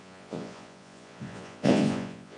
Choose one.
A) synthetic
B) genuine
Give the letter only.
A